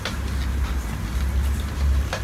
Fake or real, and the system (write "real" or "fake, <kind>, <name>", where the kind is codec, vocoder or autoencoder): real